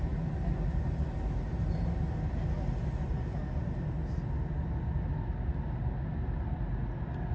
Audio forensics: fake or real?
real